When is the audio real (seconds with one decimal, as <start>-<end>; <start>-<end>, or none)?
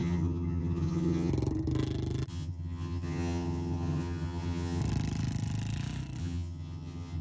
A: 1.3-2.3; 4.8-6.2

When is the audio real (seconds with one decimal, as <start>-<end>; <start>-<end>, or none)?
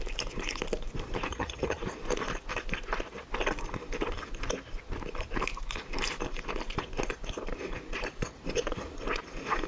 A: 0.0-1.3; 1.8-9.7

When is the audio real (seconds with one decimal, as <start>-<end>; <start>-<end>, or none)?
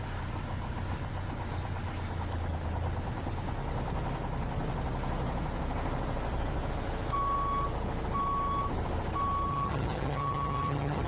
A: 0.0-9.5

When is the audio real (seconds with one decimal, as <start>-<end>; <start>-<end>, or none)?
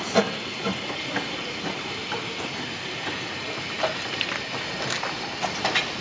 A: 0.0-6.0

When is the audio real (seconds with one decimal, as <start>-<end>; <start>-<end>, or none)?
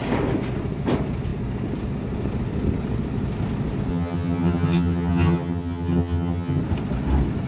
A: 0.0-3.9; 6.6-7.5